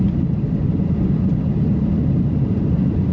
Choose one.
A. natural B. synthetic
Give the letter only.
A